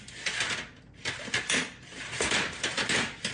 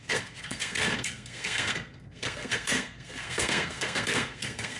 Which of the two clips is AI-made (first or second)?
second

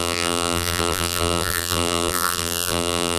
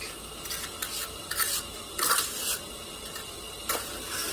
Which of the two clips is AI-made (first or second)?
first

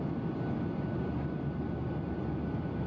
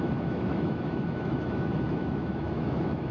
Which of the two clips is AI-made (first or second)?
second